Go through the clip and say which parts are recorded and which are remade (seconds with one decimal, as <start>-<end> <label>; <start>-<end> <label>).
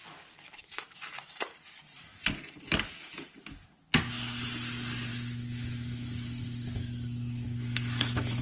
0.0-0.6 recorded; 0.6-1.1 remade; 1.1-5.1 recorded; 5.1-8.4 remade